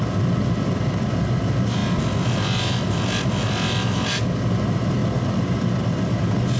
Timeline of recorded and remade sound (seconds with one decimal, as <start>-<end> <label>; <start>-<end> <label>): 0.0-6.6 recorded